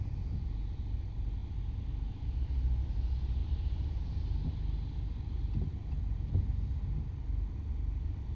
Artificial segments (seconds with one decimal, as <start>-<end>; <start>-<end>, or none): none